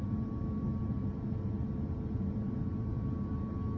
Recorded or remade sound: recorded